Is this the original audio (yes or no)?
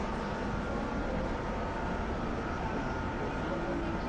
yes